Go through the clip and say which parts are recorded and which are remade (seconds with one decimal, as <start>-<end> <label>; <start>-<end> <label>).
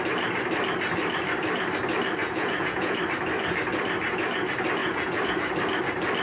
0.0-2.2 recorded; 2.2-3.0 remade; 3.0-4.8 recorded; 4.8-5.4 remade; 5.4-6.2 recorded